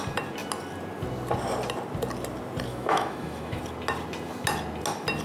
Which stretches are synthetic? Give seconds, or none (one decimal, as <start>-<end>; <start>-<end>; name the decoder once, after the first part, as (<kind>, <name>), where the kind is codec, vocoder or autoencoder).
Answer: 2.7-3.6 (autoencoder, DAC-VAE)